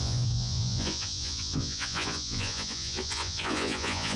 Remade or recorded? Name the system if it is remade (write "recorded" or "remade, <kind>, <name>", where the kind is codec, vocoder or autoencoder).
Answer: remade, vocoder, Vocos